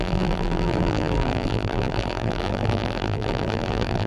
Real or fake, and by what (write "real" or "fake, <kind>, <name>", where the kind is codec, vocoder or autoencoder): fake, vocoder, BigVGAN v2